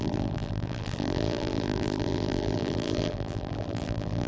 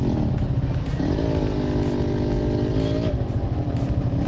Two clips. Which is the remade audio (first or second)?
first